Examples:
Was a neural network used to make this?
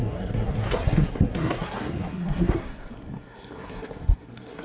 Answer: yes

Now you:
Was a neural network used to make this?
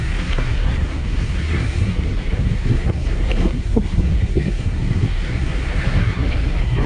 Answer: yes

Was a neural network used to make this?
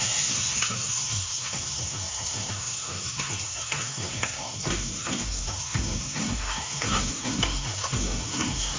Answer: yes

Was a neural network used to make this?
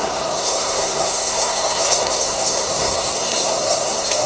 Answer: yes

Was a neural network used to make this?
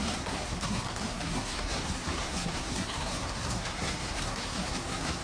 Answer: yes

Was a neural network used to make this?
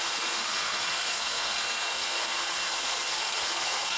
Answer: yes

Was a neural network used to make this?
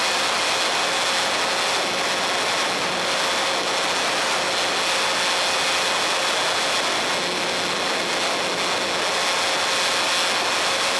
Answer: no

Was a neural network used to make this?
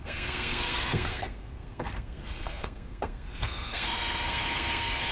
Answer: yes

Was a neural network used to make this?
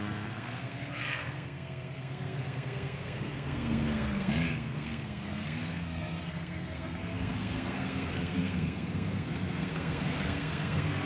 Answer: yes